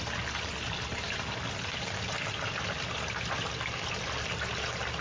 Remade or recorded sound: recorded